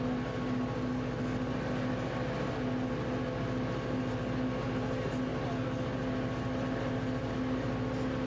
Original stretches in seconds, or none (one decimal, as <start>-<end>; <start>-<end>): 0.0-8.3